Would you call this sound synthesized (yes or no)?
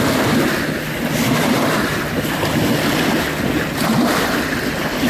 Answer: no